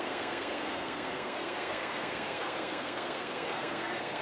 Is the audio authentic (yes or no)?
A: no